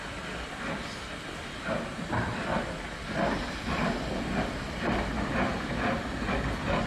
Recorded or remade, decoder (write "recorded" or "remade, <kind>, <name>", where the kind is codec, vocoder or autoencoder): recorded